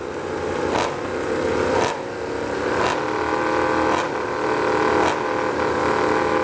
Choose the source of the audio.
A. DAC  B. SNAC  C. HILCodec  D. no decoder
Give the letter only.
D